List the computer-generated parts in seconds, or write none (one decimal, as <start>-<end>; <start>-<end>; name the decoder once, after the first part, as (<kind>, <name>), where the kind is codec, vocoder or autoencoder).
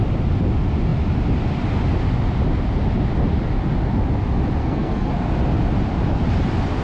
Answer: 4.6-5.1 (codec, SNAC)